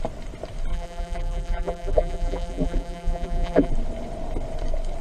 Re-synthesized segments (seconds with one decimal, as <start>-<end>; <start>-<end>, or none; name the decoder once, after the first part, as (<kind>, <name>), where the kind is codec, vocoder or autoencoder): 0.7-3.7 (vocoder, BigVGAN v2)